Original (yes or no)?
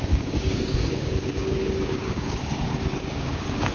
no